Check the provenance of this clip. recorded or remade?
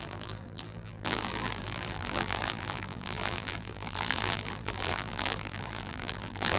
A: remade